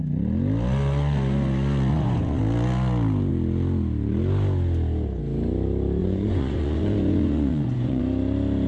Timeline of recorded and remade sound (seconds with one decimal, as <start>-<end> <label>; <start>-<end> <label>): 0.0-1.9 recorded; 1.9-2.4 remade; 2.4-6.0 recorded; 6.0-8.0 remade; 8.0-8.7 recorded